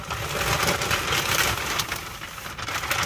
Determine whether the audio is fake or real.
real